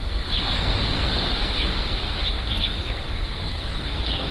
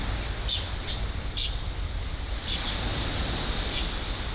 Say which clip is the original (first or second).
second